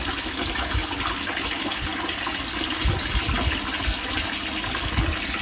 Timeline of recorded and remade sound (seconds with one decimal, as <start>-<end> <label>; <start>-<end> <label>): 0.0-5.4 recorded